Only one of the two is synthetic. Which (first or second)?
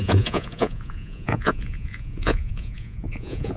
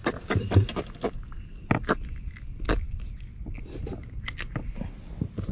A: first